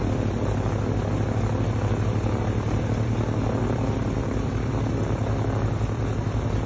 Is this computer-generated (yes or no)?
no